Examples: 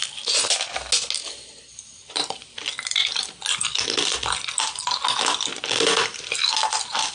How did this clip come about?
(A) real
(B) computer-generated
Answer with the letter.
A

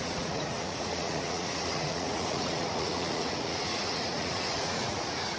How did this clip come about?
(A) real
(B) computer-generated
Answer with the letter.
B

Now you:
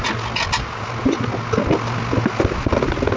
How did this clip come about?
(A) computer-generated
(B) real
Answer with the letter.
B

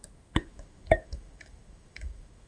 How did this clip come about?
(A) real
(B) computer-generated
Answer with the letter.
B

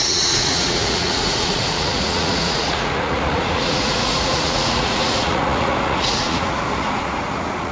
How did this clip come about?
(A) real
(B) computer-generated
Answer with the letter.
B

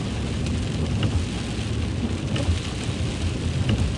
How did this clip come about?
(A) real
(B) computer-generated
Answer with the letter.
A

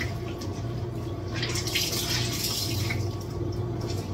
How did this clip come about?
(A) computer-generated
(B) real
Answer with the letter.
B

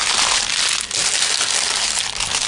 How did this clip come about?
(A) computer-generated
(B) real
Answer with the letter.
B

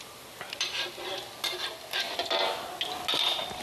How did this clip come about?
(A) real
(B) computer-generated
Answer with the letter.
A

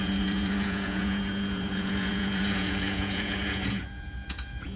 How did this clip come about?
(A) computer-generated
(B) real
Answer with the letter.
A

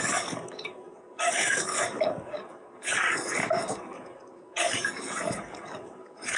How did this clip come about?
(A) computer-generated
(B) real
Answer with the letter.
A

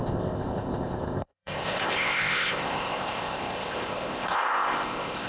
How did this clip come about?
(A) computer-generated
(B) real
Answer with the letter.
A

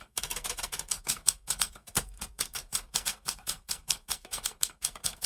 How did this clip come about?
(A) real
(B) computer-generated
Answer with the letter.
B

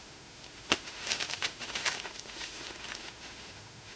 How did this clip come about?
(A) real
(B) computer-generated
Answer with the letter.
B